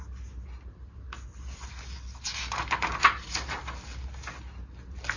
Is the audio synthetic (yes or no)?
no